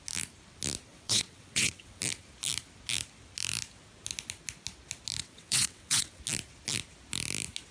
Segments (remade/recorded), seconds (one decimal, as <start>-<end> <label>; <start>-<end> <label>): 0.0-0.9 recorded; 0.9-2.0 remade; 2.0-5.2 recorded; 5.2-6.2 remade; 6.2-7.7 recorded